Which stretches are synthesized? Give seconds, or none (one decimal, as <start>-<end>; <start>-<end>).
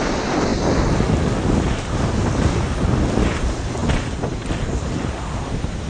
none